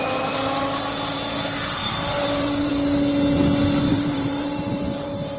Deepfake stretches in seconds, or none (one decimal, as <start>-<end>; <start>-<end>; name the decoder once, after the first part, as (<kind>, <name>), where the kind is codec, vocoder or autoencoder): 1.8-2.7 (vocoder, BigVGAN v2); 3.9-5.4